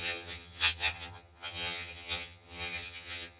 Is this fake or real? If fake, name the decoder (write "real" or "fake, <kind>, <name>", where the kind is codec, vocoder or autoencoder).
fake, vocoder, HiFi-GAN